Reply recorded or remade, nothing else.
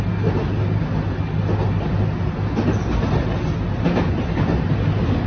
recorded